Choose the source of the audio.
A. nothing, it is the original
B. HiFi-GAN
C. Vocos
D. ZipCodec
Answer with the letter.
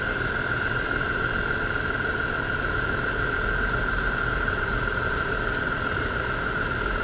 A